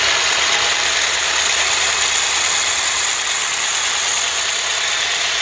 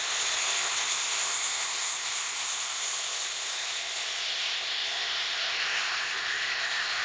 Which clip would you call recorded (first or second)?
first